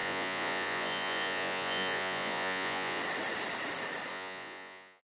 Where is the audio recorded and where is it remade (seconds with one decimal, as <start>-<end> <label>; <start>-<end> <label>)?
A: 0.0-3.0 remade; 3.0-4.1 recorded; 4.1-5.0 remade